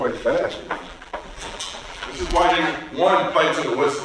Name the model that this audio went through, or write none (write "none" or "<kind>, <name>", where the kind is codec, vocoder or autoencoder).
vocoder, BigVGAN v2